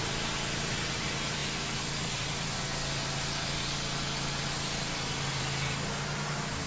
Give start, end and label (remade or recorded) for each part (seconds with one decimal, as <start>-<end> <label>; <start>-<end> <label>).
0.0-6.7 recorded